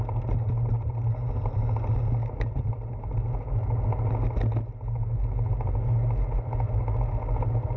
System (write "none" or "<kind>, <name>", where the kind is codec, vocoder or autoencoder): none